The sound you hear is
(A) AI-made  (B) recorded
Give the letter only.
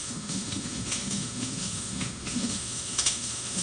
A